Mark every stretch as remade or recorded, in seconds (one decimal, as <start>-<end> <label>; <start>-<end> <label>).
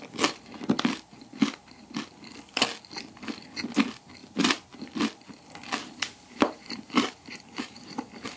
0.0-4.2 recorded; 4.2-4.9 remade; 4.9-5.8 recorded; 5.8-8.4 remade